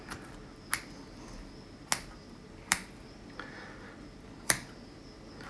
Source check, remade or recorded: recorded